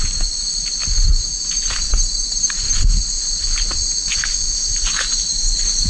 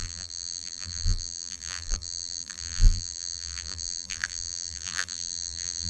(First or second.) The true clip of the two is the first